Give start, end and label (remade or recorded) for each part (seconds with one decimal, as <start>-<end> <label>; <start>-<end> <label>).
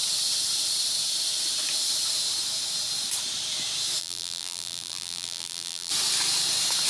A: 0.0-4.0 recorded; 4.0-5.9 remade; 5.9-6.9 recorded